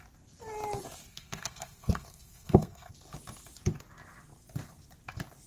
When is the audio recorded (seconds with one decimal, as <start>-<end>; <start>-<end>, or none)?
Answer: 0.0-1.1; 2.9-5.5